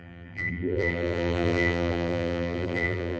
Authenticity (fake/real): fake